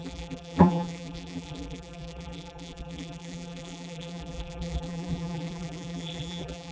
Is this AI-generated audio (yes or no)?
yes